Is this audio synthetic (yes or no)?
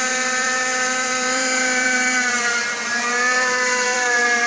yes